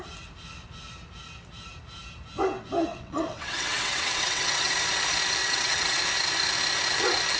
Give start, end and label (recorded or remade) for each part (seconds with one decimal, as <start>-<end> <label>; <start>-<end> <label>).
0.0-2.9 recorded; 2.9-4.7 remade; 4.7-5.4 recorded; 5.4-6.0 remade; 6.0-7.4 recorded